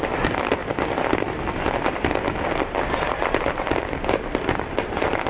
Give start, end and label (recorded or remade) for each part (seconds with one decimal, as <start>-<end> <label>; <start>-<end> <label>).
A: 0.0-0.6 remade; 0.6-3.8 recorded; 3.8-5.3 remade

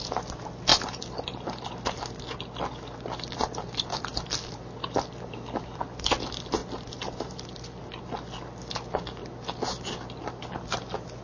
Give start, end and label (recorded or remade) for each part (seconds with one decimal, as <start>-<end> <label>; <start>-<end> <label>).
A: 0.0-0.7 recorded; 0.7-1.7 remade; 1.7-3.9 recorded; 3.9-5.8 remade; 5.8-6.6 recorded; 6.6-7.8 remade; 7.8-11.2 recorded

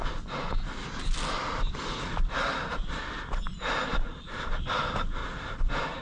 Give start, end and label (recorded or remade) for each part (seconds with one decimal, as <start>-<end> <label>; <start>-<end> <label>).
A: 0.0-2.5 recorded; 2.5-3.0 remade; 3.0-3.9 recorded; 3.9-4.5 remade; 4.5-5.2 recorded; 5.2-6.0 remade

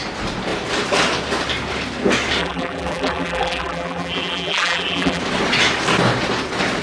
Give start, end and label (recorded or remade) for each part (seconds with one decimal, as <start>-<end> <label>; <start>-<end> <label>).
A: 0.0-2.4 recorded; 2.4-5.2 remade; 5.2-6.8 recorded

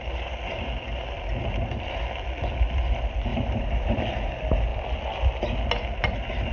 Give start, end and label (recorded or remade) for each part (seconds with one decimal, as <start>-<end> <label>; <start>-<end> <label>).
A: 0.0-3.3 recorded; 3.3-4.3 remade; 4.3-6.5 recorded

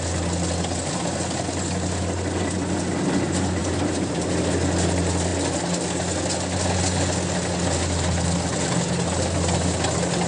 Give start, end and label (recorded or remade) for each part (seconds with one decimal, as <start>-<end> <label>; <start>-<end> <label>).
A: 0.0-3.6 recorded; 3.6-4.3 remade; 4.3-10.3 recorded